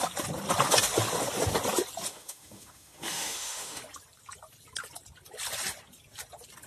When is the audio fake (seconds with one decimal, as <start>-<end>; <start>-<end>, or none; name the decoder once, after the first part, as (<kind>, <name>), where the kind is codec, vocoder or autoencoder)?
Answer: 2.1-3.8 (autoencoder, DAC-VAE)